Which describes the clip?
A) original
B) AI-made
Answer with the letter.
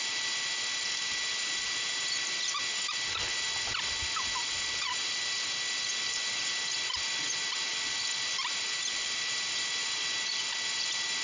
A